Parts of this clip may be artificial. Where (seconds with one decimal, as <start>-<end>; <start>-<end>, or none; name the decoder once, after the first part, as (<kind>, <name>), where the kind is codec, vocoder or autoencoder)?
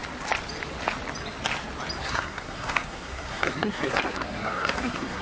2.0-5.2 (codec, SNAC)